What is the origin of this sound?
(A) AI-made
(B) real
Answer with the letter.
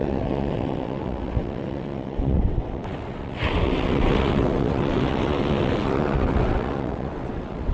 A